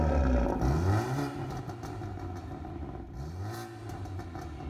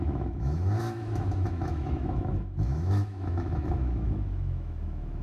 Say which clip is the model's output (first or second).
second